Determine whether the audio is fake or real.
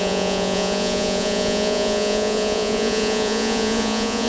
fake